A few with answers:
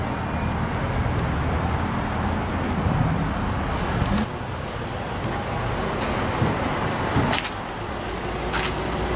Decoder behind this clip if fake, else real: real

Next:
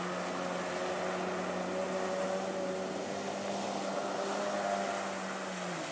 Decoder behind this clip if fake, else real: real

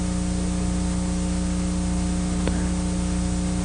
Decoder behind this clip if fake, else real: real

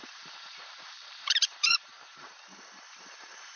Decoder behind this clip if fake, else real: fake, vocoder, BigVGAN v2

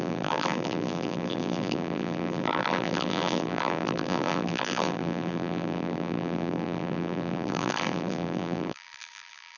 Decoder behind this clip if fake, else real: fake, vocoder, BigVGAN v2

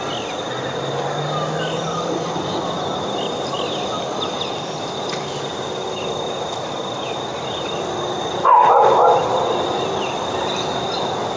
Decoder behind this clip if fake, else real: real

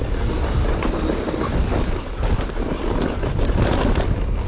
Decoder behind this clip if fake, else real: real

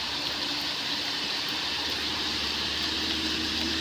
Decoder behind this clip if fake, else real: fake, vocoder, BigVGAN v2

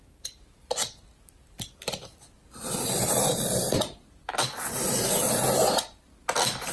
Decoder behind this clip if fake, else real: real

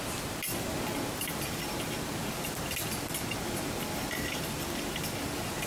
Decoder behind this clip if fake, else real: real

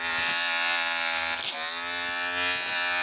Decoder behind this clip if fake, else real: real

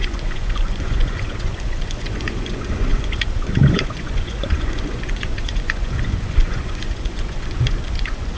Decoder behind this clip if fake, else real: fake, vocoder, Vocos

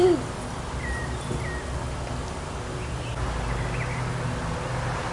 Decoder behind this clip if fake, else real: real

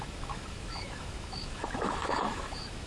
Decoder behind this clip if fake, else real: fake, autoencoder, DAC-VAE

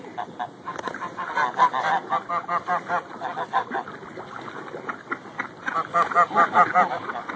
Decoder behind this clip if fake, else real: real